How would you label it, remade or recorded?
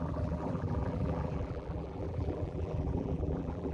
remade